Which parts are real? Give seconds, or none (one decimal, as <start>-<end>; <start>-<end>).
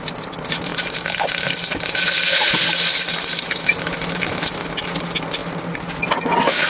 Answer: 0.0-6.7